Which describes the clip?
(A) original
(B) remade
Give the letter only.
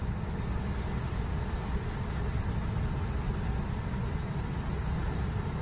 A